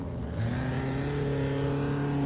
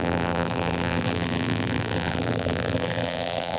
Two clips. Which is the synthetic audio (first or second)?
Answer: second